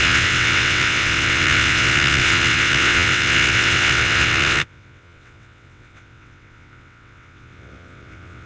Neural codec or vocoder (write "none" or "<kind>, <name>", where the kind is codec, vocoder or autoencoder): vocoder, WaveNeXt